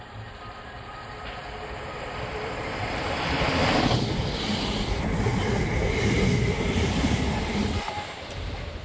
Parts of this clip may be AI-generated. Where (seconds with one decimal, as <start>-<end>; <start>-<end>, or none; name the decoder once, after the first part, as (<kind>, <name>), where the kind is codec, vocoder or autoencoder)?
0.0-5.3 (vocoder, BigVGAN v2); 6.2-8.8